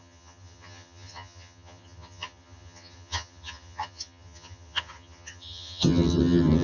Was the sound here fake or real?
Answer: fake